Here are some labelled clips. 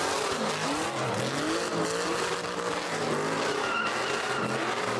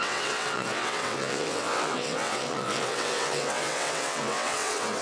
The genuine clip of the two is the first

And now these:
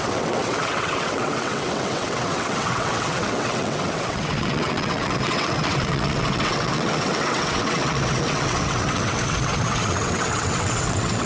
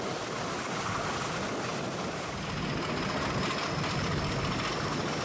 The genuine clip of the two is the second